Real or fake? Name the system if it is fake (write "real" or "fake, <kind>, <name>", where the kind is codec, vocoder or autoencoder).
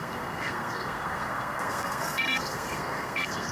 fake, codec, SNAC